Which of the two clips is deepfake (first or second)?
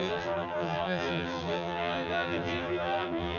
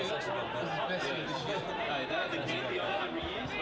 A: first